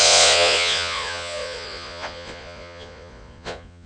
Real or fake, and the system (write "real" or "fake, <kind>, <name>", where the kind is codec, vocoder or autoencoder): fake, vocoder, Vocos